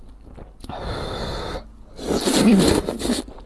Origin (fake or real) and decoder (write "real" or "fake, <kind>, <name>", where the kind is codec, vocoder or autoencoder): real